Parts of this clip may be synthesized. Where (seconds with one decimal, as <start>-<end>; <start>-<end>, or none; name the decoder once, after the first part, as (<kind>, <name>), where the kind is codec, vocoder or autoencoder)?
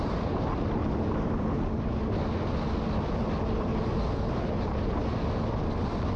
0.0-0.8 (vocoder, BigVGAN v2); 2.8-3.7; 5.8-6.2